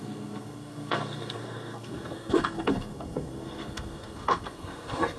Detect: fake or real fake